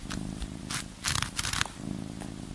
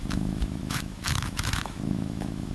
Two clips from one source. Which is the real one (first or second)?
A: first